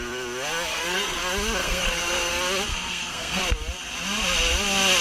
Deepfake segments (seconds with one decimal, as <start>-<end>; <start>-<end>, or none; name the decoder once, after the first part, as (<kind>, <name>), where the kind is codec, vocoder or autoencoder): 0.7-1.2 (codec, SNAC); 1.6-2.3; 2.7-3.4